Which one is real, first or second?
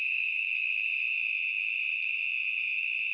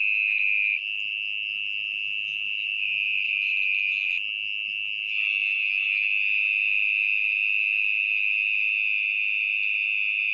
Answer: second